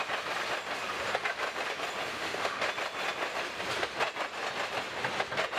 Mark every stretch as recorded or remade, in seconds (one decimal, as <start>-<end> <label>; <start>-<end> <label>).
0.0-2.1 recorded; 2.1-2.6 remade; 2.6-5.6 recorded